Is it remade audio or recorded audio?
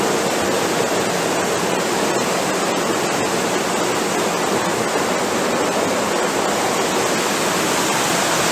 recorded